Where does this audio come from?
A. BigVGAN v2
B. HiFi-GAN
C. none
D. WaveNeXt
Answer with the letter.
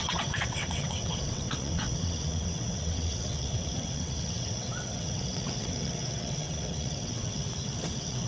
D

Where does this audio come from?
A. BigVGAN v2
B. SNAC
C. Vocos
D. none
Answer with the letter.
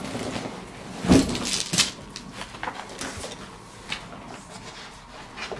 D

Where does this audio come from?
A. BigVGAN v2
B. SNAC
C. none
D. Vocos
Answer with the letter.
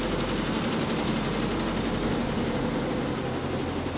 C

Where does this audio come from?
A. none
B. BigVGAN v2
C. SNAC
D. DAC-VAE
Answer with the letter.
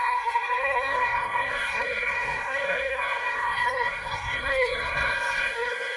C